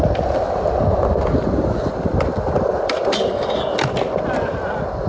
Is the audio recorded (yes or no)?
no